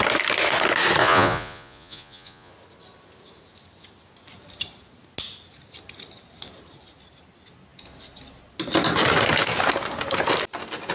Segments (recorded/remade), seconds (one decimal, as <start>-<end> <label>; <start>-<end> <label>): 0.0-1.0 recorded; 1.0-2.5 remade; 2.5-10.9 recorded